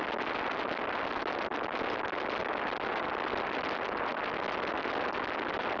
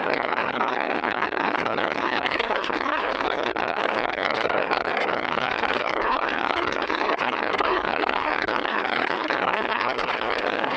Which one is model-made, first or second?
second